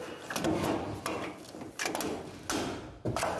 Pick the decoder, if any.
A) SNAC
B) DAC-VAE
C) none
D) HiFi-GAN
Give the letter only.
C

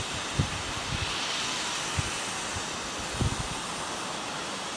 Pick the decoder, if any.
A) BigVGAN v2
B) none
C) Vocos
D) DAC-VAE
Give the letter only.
B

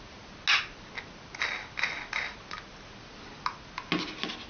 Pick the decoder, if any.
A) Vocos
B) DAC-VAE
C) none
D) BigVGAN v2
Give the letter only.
C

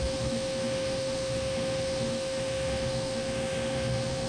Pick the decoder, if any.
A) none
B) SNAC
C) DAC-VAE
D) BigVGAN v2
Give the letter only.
C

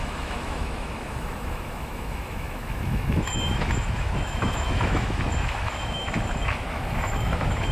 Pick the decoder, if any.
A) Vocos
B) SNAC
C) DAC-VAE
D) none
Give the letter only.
C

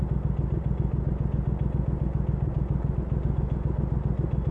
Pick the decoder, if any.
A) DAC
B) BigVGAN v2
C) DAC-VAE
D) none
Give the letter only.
D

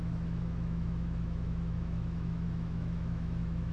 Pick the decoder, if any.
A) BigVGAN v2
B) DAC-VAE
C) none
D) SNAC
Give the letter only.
B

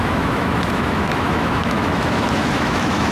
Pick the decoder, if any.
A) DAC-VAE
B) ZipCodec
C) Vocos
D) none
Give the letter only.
A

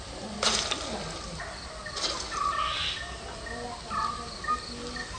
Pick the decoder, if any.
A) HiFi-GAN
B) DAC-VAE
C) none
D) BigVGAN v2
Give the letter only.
C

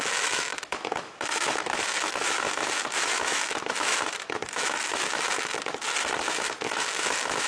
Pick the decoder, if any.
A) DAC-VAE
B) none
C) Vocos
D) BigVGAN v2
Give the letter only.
A